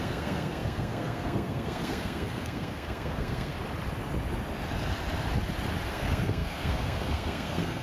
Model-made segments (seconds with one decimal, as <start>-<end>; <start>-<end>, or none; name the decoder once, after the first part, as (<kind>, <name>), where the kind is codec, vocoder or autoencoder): 0.0-3.5 (codec, SNAC); 5.9-7.8